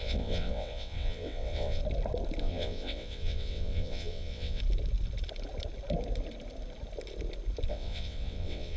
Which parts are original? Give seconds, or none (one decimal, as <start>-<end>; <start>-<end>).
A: 1.8-2.4; 4.6-7.7